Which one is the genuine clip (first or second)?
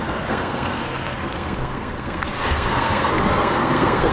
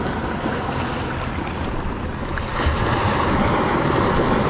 second